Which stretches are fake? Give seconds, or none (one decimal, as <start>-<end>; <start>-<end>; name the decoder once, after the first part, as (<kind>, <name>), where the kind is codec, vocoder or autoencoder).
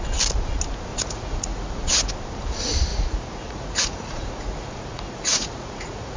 0.9-2.1 (vocoder, Vocos); 2.9-6.2